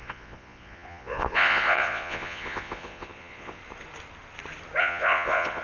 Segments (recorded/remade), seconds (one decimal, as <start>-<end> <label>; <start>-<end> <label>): 0.0-3.6 remade; 3.6-4.8 recorded; 4.8-5.6 remade

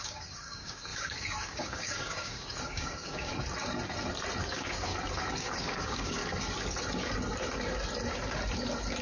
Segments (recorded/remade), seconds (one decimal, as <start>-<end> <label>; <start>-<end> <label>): 0.0-3.3 remade; 3.3-4.4 recorded; 4.4-4.9 remade; 4.9-5.4 recorded; 5.4-6.2 remade; 6.2-9.0 recorded

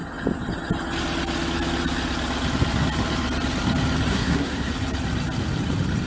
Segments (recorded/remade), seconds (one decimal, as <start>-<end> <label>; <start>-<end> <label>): 0.0-4.1 recorded; 4.1-4.7 remade; 4.7-6.1 recorded

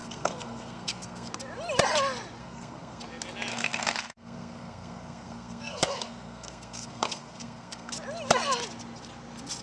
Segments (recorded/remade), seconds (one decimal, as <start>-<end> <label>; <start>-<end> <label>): 0.0-1.3 remade; 1.3-2.4 recorded; 2.4-3.0 remade; 3.0-3.5 recorded; 3.5-7.9 remade; 7.9-9.6 recorded

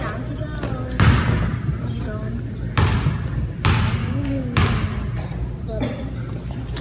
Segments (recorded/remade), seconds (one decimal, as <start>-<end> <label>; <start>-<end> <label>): 0.0-4.0 recorded; 4.0-4.7 remade; 4.7-6.8 recorded